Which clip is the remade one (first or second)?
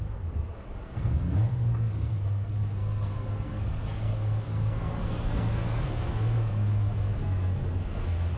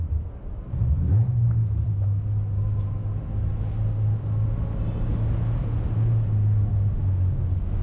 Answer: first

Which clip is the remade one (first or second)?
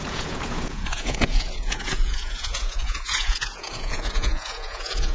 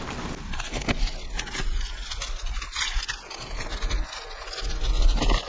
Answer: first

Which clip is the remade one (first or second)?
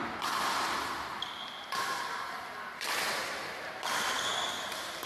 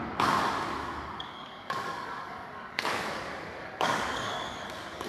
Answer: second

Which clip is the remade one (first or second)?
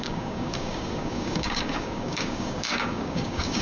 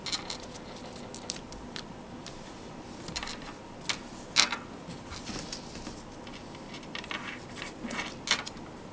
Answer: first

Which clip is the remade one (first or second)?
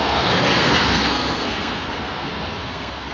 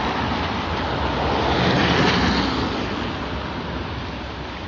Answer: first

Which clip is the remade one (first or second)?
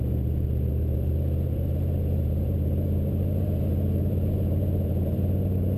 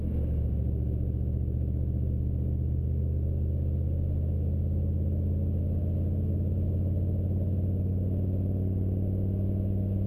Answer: first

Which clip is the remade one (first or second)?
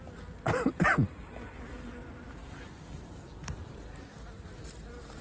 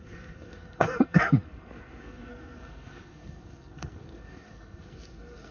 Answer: second